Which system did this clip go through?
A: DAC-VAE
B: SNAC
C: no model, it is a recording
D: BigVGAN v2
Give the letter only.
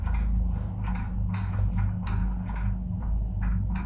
C